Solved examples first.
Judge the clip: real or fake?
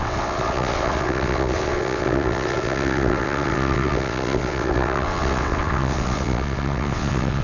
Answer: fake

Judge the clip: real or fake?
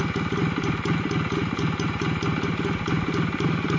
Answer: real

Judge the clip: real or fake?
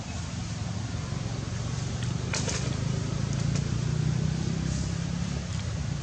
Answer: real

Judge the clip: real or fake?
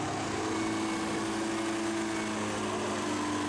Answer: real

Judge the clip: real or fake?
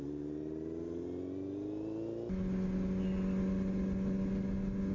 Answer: real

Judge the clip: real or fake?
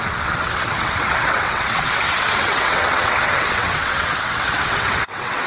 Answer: fake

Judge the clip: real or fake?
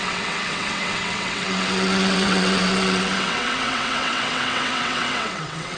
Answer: fake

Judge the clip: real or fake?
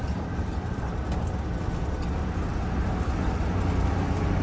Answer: real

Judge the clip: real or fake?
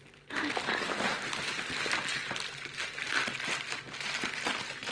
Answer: real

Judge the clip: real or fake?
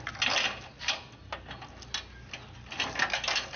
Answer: real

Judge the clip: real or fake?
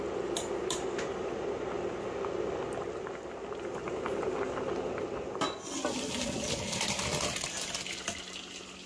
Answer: real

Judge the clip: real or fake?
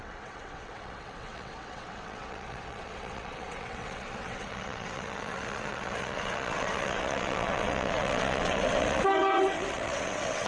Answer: fake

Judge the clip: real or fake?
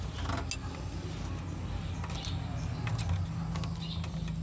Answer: real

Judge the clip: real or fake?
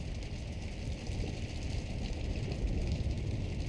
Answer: real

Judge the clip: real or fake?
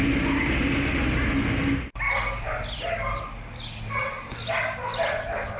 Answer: real